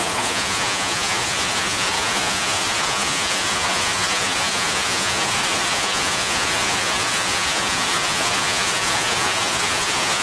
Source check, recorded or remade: remade